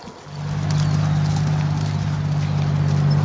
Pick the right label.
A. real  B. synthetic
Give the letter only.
A